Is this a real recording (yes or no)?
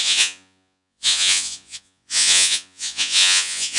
no